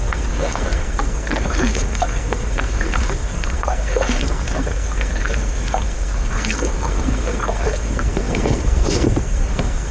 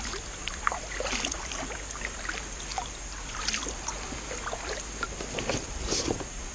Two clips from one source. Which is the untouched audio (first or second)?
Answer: second